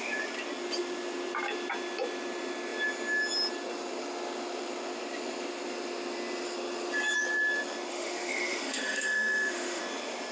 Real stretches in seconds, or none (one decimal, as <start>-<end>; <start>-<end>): 0.0-7.9; 9.8-10.3